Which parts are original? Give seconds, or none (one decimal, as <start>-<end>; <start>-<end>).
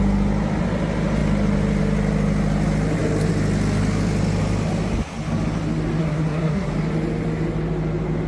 0.0-6.0; 6.7-8.3